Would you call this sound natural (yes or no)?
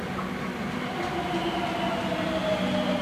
yes